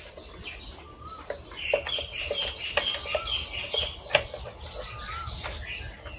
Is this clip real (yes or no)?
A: yes